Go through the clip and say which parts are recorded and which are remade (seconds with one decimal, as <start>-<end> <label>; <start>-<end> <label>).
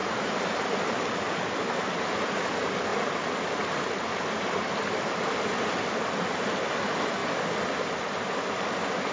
0.0-2.4 remade; 2.4-9.1 recorded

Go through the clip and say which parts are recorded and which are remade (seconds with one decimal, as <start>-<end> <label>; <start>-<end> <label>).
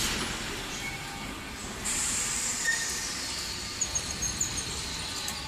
0.0-0.4 recorded; 0.4-1.0 remade; 1.0-1.6 recorded; 1.6-4.9 remade; 4.9-5.5 recorded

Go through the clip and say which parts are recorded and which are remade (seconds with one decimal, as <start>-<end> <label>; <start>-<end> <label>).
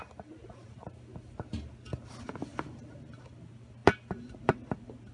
0.0-1.5 remade; 1.5-2.0 recorded; 2.0-5.1 remade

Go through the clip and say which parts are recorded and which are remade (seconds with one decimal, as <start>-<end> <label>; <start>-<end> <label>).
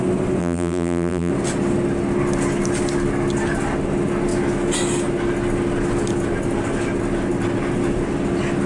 0.0-0.4 recorded; 0.4-1.3 remade; 1.3-8.7 recorded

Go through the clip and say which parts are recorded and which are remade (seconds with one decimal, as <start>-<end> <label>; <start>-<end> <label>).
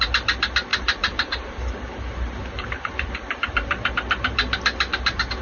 0.0-0.7 recorded; 0.7-3.9 remade; 3.9-5.4 recorded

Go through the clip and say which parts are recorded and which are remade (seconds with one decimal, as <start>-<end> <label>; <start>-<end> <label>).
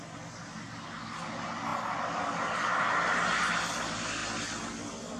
0.0-5.2 recorded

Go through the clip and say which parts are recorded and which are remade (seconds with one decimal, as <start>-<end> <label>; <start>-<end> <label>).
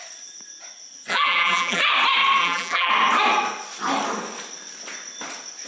0.0-1.1 recorded; 1.1-1.8 remade; 1.8-2.4 recorded; 2.4-2.9 remade; 2.9-5.7 recorded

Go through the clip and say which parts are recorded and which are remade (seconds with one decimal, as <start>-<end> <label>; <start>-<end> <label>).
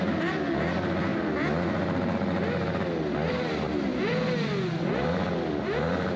0.0-1.1 remade; 1.1-3.3 recorded; 3.3-4.1 remade; 4.1-4.9 recorded; 4.9-6.2 remade